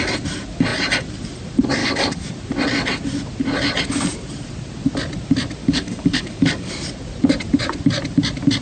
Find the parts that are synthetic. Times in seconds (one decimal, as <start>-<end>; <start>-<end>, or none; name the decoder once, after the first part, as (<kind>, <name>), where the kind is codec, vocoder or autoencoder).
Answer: 1.8-2.3 (codec, DAC); 5.6-6.7